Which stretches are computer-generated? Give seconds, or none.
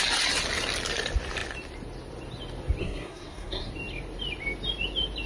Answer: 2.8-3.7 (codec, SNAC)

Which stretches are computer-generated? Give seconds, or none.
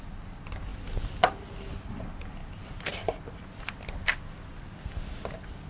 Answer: none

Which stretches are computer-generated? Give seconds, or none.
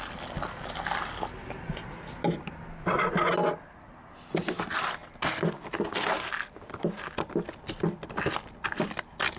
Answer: none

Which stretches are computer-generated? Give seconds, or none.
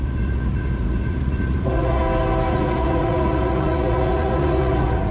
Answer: 0.0-2.0 (vocoder, Vocos); 2.5-5.1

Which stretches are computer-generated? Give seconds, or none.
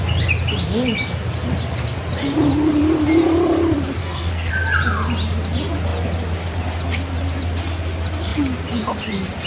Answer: 4.0-4.5 (codec, SNAC)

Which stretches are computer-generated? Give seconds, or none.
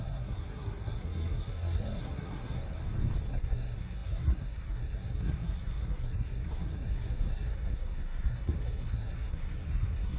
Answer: 0.0-2.6 (codec, SNAC); 3.3-10.2